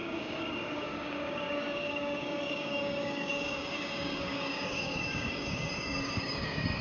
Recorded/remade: remade